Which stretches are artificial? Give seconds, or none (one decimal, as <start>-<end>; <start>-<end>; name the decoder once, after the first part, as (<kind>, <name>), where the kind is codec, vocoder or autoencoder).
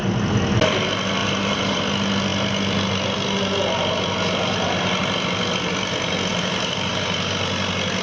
1.2-1.8 (vocoder, BigVGAN v2); 6.3-6.9